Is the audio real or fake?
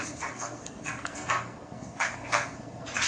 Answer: fake